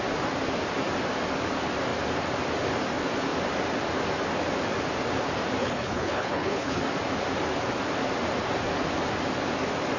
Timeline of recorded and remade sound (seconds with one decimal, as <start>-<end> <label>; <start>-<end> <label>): 0.0-5.6 recorded; 5.6-6.8 remade; 6.8-10.0 recorded